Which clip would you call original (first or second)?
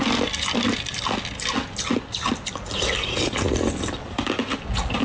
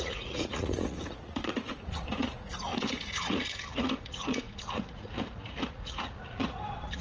first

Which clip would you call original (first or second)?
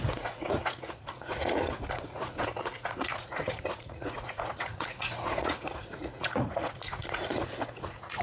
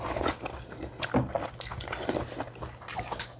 second